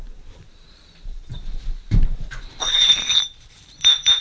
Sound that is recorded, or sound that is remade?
remade